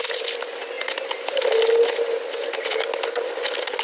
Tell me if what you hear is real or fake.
real